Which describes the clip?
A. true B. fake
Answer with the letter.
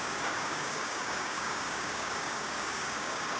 B